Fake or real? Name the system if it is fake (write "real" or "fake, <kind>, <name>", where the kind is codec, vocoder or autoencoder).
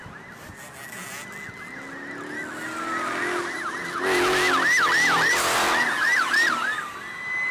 real